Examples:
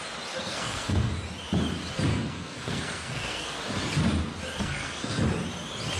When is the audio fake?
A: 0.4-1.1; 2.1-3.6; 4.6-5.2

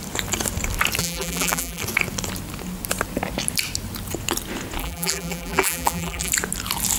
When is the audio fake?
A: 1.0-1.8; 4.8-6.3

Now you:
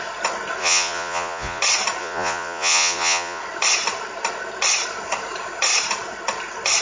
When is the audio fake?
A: 0.6-1.6; 2.0-3.4

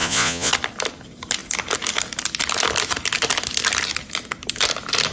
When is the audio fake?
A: 0.0-0.5

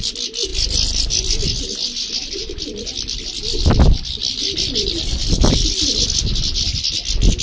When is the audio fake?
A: 0.5-1.3; 2.4-6.8